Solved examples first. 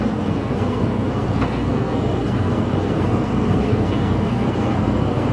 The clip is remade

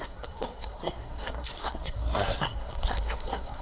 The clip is remade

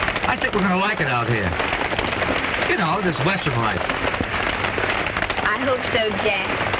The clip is recorded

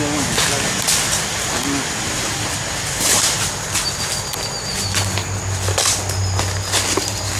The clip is recorded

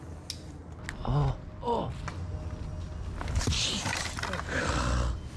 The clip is recorded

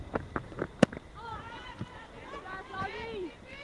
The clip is recorded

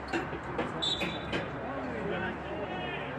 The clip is recorded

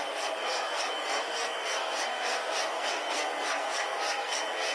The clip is remade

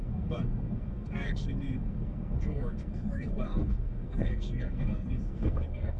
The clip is remade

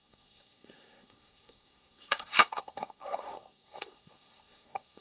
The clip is remade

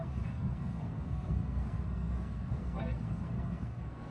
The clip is remade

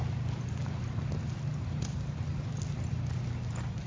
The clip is recorded